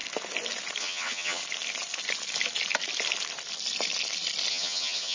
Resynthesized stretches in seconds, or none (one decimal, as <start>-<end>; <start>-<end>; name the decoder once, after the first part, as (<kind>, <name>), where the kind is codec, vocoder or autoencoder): 0.8-1.4 (vocoder, HiFi-GAN); 4.5-5.1